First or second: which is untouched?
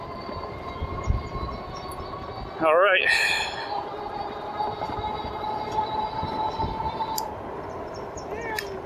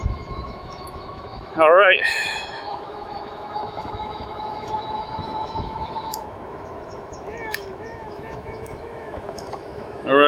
first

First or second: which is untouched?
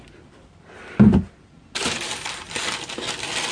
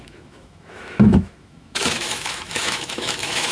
first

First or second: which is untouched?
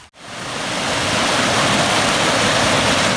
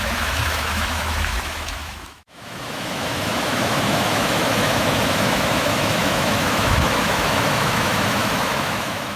first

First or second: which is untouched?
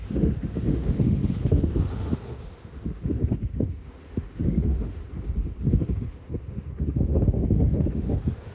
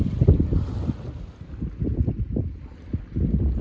second